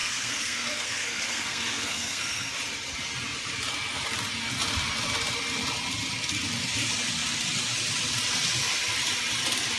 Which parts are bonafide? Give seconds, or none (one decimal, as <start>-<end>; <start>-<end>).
2.5-9.8